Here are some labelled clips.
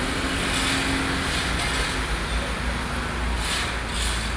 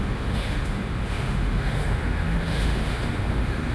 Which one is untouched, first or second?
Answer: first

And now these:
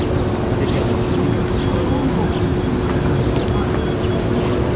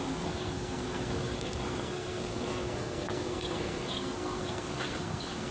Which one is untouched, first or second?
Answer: first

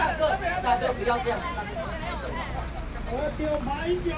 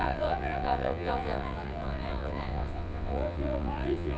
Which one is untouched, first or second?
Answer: first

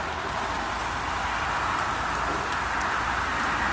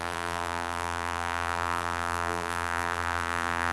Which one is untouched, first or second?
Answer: first